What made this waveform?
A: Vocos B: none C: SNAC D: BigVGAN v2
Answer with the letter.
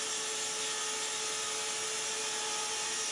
B